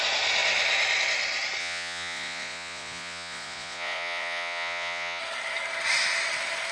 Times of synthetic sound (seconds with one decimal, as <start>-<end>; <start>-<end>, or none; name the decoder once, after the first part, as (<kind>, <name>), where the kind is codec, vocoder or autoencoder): 1.6-5.2 (vocoder, Vocos)